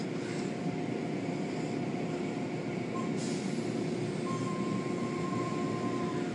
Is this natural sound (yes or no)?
yes